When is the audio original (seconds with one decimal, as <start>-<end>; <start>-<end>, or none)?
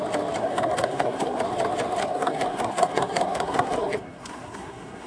0.0-0.4; 1.4-2.0